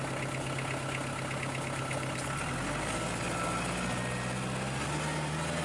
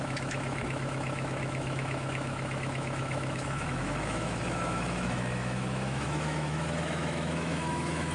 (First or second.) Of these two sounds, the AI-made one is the second